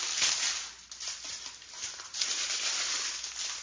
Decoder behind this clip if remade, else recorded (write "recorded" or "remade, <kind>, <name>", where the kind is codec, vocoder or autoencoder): recorded